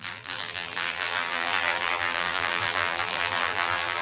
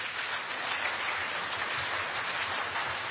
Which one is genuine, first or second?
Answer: second